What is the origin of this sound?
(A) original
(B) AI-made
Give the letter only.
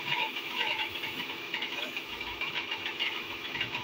B